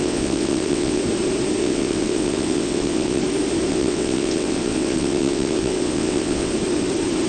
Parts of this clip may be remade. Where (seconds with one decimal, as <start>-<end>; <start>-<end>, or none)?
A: 0.0-1.0; 1.6-3.2; 3.7-6.5